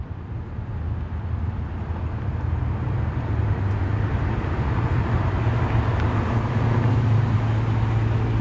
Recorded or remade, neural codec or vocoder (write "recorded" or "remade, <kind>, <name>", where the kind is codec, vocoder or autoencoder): recorded